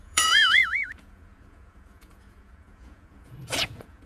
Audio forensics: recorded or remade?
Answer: remade